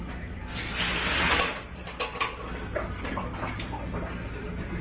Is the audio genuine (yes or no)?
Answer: yes